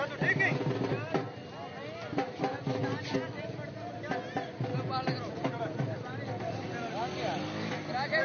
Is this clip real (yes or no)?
yes